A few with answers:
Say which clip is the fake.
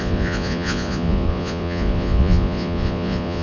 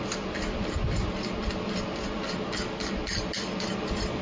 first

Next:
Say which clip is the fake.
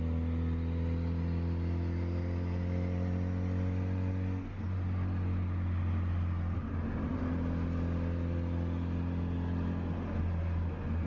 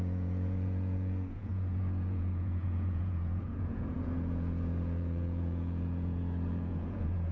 second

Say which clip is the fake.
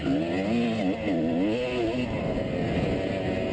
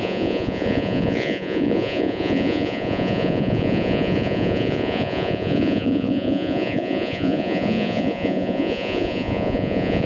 second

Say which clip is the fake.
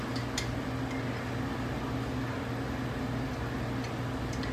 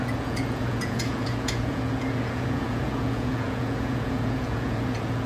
second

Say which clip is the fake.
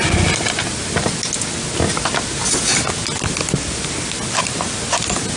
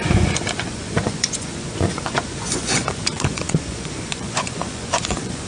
second